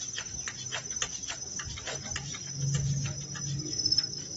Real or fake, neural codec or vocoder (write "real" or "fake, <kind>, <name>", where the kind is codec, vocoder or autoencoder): real